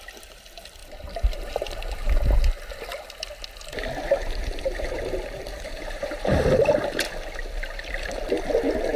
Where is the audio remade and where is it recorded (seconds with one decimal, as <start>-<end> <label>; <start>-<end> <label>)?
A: 0.0-0.8 recorded; 0.8-2.1 remade; 2.1-4.2 recorded; 4.2-7.0 remade; 7.0-9.0 recorded